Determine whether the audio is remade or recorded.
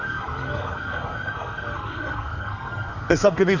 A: remade